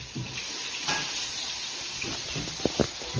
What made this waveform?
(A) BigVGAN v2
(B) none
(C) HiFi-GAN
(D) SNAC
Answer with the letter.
B